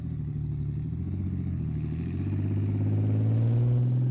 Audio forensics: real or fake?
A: real